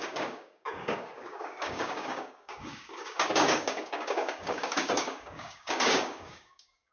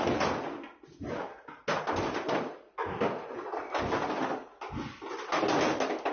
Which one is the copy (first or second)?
first